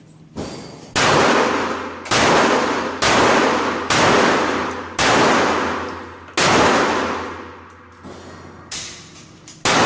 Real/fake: real